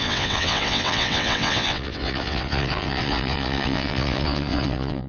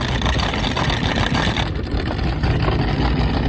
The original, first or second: second